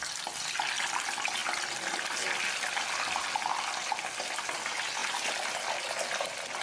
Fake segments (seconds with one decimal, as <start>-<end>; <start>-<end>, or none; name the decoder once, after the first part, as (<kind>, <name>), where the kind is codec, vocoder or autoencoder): none